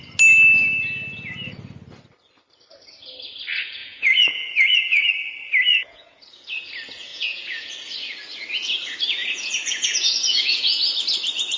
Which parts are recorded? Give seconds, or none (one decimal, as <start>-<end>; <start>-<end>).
0.0-3.8; 5.1-5.7; 6.2-7.1; 7.7-9.2; 10.8-11.6